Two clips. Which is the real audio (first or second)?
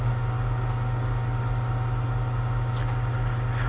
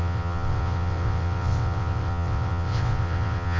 first